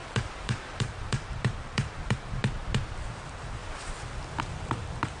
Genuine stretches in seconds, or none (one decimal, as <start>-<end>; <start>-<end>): 2.4-3.1; 3.6-4.4